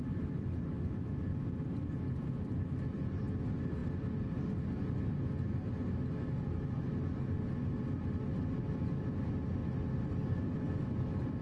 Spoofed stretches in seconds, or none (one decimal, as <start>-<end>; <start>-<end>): none